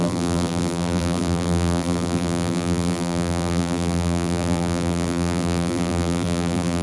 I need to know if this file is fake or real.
fake